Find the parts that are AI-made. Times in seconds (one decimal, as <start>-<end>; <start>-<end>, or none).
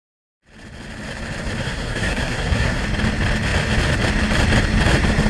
1.6-2.8